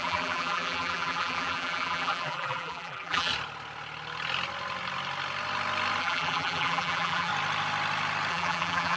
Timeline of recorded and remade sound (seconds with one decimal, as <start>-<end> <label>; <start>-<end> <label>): 0.0-3.3 remade; 3.3-6.0 recorded; 6.0-7.3 remade; 7.3-8.3 recorded; 8.3-9.0 remade

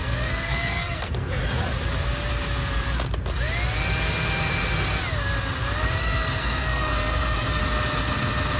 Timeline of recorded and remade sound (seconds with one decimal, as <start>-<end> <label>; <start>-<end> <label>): 0.0-1.4 remade; 1.4-6.0 recorded; 6.0-7.6 remade; 7.6-8.6 recorded

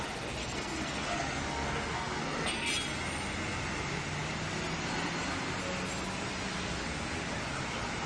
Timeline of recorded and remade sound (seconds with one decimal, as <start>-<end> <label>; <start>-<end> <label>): 0.0-0.4 recorded; 0.4-2.7 remade; 2.7-8.1 recorded

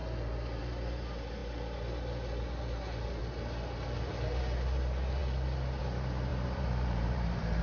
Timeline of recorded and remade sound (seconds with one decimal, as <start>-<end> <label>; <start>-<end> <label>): 0.0-6.3 recorded; 6.3-7.6 remade

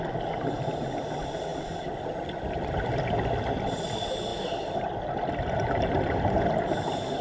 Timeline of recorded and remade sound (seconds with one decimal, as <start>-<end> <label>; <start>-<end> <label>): 0.0-1.5 recorded; 1.5-2.4 remade; 2.4-7.2 recorded

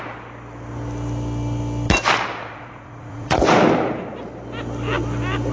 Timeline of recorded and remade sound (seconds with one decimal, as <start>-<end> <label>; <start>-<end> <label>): 0.0-2.3 recorded; 2.3-3.5 remade; 3.5-5.5 recorded

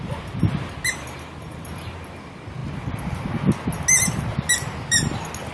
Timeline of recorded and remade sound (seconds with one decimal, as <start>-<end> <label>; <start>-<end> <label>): 0.0-5.5 recorded

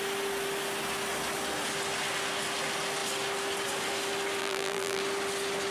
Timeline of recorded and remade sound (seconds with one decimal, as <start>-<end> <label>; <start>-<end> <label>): 0.0-4.4 recorded; 4.4-5.0 remade; 5.0-5.7 recorded